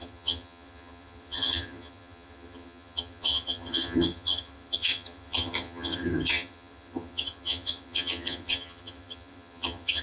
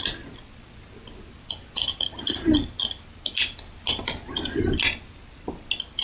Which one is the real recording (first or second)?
second